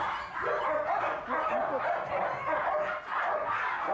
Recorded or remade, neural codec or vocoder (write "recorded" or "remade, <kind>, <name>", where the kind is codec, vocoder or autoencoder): recorded